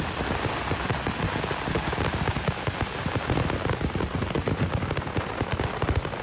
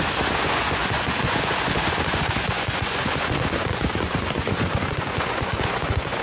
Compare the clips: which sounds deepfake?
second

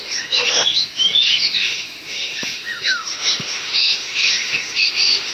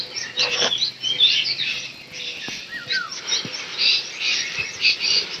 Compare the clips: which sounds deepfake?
first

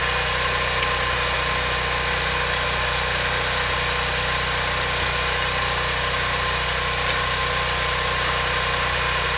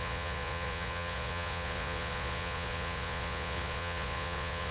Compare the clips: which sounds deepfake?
second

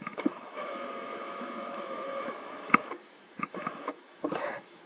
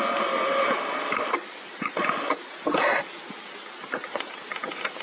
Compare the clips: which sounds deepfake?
first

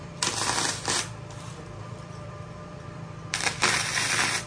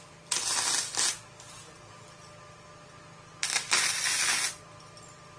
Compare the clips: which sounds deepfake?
first